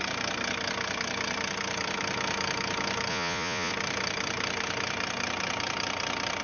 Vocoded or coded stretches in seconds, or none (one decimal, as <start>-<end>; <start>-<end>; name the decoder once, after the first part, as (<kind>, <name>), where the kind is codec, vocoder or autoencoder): 3.1-3.7 (vocoder, Vocos)